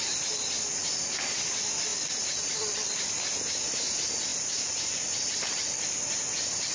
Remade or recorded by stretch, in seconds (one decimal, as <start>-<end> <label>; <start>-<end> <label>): 0.0-4.3 recorded; 4.3-5.0 remade; 5.0-6.7 recorded